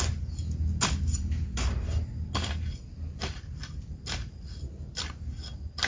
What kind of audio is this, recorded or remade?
recorded